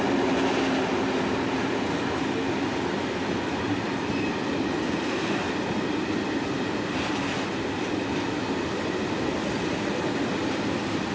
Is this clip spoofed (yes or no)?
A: no